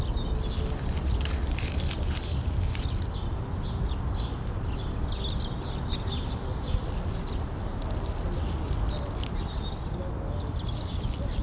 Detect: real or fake real